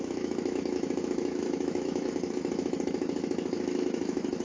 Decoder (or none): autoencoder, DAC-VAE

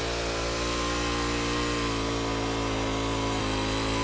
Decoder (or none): none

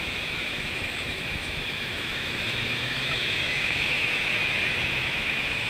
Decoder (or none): autoencoder, DAC-VAE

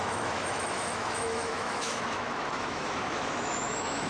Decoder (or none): autoencoder, DAC-VAE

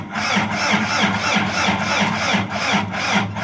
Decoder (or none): none